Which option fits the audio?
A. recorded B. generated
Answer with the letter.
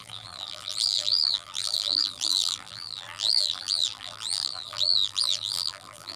B